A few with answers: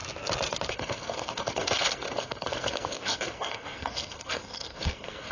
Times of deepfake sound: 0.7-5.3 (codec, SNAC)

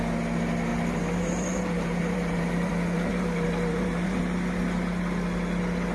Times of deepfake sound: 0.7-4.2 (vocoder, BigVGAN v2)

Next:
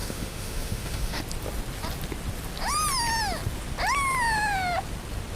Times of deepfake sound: 0.0-1.2 (autoencoder, DAC-VAE)

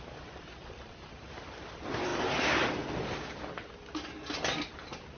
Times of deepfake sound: none

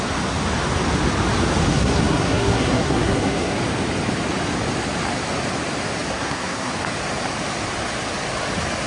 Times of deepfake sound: 1.7-3.6 (codec, SNAC); 6.1-6.7